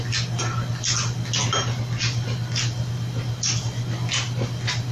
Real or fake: real